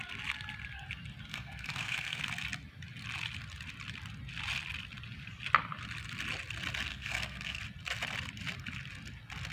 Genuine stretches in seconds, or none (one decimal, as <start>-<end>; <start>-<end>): 0.0-1.3; 2.2-6.9; 7.6-9.5